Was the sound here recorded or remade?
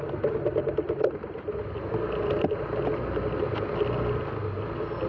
recorded